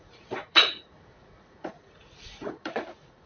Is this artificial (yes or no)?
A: yes